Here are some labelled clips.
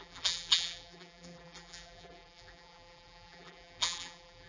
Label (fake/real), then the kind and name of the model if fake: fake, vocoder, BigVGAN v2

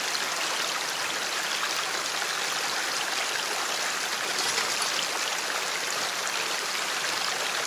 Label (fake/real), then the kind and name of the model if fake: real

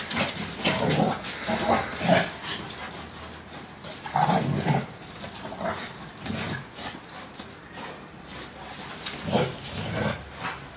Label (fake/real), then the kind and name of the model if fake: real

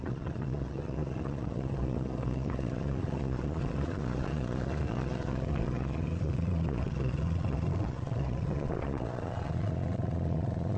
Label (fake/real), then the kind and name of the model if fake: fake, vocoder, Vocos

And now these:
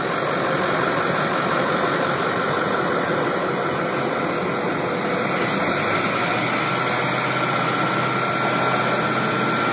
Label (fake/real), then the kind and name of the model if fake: real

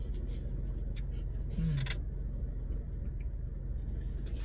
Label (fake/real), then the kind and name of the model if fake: real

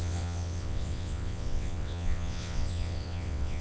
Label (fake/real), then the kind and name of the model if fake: fake, vocoder, WaveNeXt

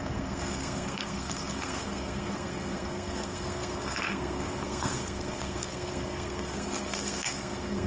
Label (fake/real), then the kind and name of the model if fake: fake, codec, SNAC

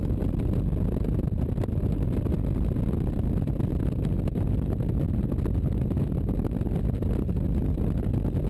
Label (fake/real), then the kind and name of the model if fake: real